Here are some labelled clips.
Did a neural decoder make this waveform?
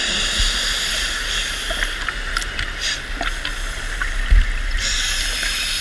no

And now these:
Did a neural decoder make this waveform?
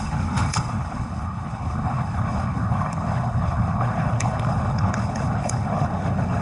yes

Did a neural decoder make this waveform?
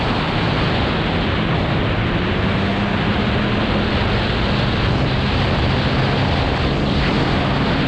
no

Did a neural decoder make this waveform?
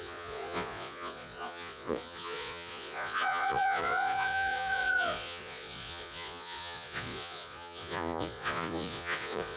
yes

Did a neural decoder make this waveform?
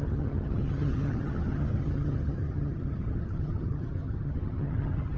yes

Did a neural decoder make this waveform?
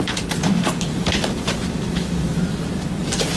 no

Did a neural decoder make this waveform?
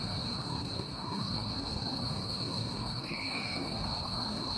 yes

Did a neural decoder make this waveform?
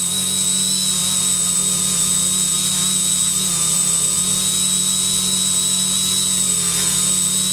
yes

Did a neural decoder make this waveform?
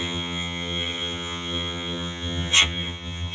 yes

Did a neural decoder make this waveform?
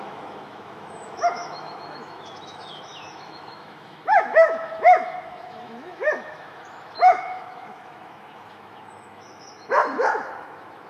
yes